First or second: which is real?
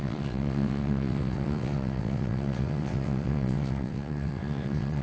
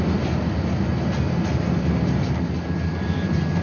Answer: second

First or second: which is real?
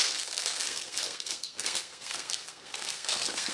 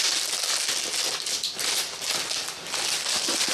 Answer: second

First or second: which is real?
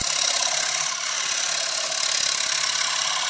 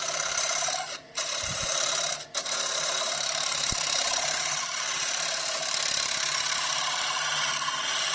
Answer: first